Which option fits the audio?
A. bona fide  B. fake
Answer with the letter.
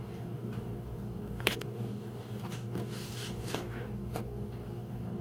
B